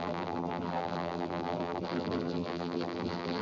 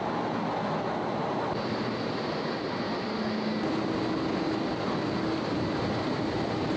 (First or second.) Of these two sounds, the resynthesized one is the first